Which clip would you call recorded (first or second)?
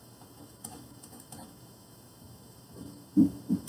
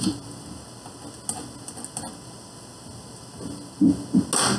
second